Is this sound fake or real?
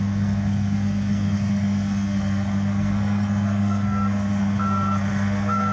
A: fake